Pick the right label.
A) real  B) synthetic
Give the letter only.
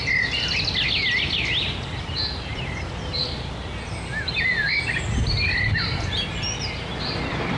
A